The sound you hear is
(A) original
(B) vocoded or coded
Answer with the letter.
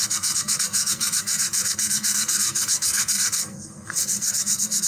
B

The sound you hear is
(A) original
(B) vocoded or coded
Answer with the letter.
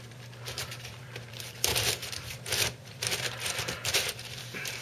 B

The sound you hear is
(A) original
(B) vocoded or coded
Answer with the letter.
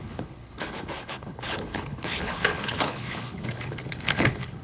B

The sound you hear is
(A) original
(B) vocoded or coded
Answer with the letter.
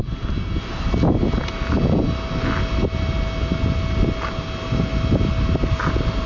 A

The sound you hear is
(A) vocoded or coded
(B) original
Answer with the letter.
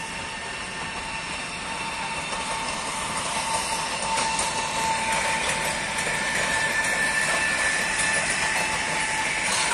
B